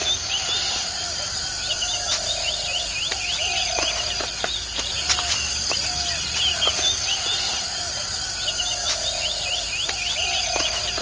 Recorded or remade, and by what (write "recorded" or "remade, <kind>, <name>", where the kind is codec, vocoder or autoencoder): recorded